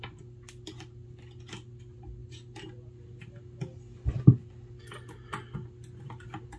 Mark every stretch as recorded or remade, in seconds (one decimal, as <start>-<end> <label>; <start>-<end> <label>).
0.0-6.6 recorded

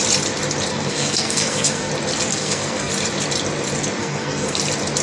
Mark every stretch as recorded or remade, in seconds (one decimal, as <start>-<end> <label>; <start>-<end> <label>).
0.0-0.7 recorded; 0.7-1.9 remade; 1.9-2.3 recorded; 2.3-2.9 remade; 2.9-4.0 recorded; 4.0-4.6 remade; 4.6-5.0 recorded

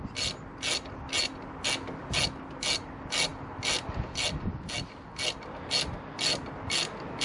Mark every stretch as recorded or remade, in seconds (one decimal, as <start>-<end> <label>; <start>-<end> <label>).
0.0-7.2 recorded